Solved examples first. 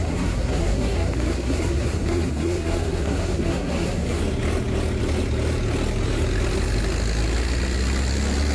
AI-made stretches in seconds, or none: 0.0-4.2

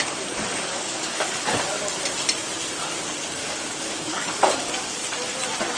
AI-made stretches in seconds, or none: 0.5-1.5; 3.4-4.9